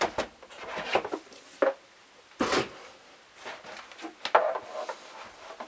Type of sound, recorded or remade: recorded